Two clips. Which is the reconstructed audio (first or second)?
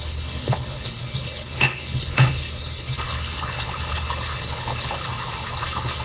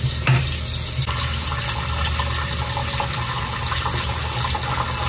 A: first